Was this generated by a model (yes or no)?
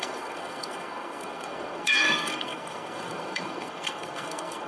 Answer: yes